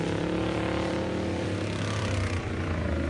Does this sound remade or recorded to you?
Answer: remade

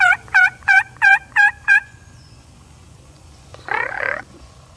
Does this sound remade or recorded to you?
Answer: remade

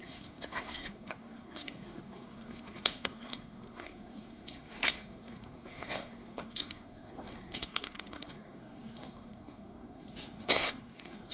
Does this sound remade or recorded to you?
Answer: remade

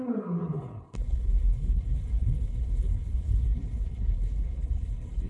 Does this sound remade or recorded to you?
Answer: remade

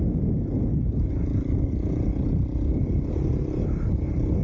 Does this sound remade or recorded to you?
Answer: recorded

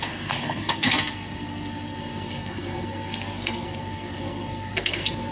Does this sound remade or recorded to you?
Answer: remade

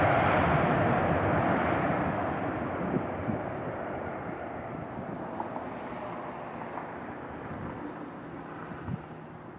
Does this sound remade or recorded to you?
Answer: recorded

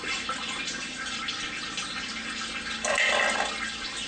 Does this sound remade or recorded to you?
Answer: recorded